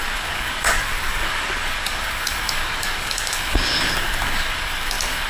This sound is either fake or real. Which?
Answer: fake